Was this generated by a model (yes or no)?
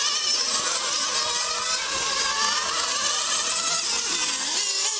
no